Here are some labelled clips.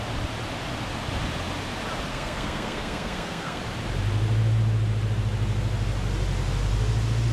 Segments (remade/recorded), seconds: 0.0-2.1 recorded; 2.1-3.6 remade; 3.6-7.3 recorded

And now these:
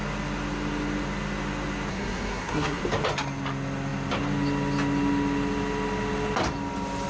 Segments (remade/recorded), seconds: 0.0-1.9 recorded; 1.9-2.8 remade; 2.8-7.1 recorded

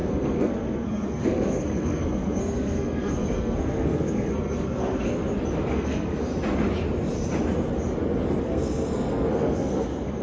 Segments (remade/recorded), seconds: 0.0-5.2 remade; 5.2-5.7 recorded; 5.7-6.3 remade; 6.3-8.4 recorded; 8.4-10.2 remade

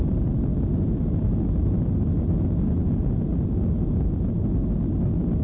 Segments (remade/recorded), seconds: 0.0-5.4 recorded

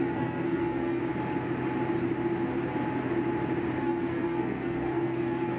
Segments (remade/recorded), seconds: 0.0-1.0 remade; 1.0-3.8 recorded; 3.8-5.6 remade

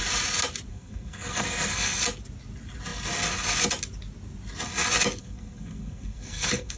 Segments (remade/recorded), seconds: 0.0-0.7 recorded; 0.7-2.0 remade; 2.0-5.2 recorded; 5.2-6.8 remade

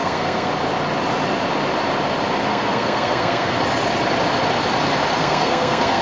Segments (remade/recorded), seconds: 0.0-0.5 remade; 0.5-2.5 recorded; 2.5-3.5 remade; 3.5-5.2 recorded; 5.2-6.0 remade